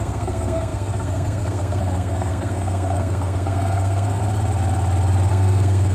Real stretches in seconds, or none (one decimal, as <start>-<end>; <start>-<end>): 4.2-5.3